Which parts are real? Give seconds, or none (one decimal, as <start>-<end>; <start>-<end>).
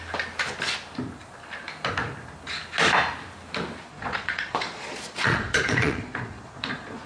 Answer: 0.0-3.9